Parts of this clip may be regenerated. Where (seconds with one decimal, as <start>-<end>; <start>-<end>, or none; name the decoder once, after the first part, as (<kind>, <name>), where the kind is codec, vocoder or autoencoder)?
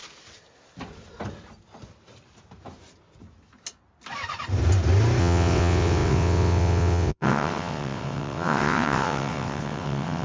5.2-10.2 (vocoder, WaveNeXt)